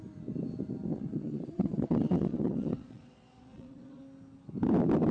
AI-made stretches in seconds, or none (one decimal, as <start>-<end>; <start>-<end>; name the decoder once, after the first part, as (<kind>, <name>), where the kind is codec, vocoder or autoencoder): 0.9-4.0 (vocoder, Vocos)